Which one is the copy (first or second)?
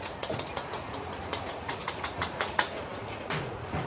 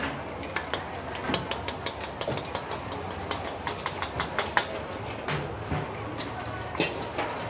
first